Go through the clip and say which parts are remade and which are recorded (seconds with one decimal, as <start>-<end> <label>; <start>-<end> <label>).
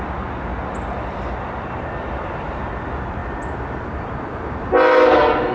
0.0-5.5 recorded